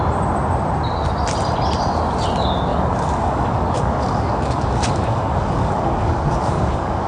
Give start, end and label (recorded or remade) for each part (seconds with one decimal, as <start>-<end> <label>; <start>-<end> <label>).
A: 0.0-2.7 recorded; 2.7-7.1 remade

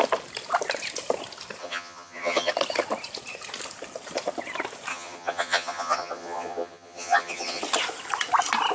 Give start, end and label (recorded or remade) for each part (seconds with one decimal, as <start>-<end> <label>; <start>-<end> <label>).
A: 0.0-1.6 recorded; 1.6-2.5 remade; 2.5-4.9 recorded; 4.9-7.6 remade; 7.6-8.7 recorded

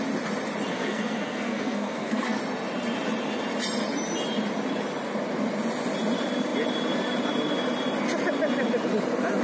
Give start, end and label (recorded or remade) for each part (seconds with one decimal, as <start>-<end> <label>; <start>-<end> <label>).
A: 0.0-0.7 recorded; 0.7-2.4 remade; 2.4-9.4 recorded

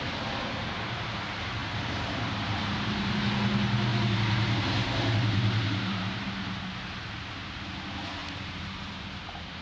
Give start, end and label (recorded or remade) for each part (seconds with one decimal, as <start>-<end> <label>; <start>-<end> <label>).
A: 0.0-1.6 recorded; 1.6-3.2 remade; 3.2-3.9 recorded; 3.9-6.6 remade; 6.6-8.2 recorded; 8.2-9.6 remade

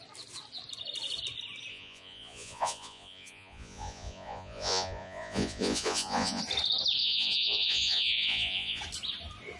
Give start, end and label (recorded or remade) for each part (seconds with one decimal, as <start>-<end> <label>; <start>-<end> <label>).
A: 0.0-1.7 recorded; 1.7-6.4 remade; 6.4-7.0 recorded; 7.0-8.8 remade; 8.8-9.6 recorded